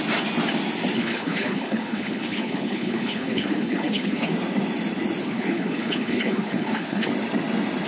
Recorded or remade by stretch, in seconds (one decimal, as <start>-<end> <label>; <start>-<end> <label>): 0.0-1.0 recorded; 1.0-4.3 remade; 4.3-5.2 recorded; 5.2-7.1 remade; 7.1-7.9 recorded